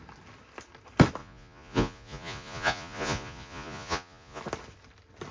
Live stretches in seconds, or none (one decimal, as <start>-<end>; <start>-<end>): 0.0-1.2; 4.4-5.3